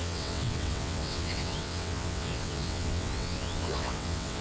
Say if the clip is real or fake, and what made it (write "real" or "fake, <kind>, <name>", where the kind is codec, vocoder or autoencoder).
fake, vocoder, WaveNeXt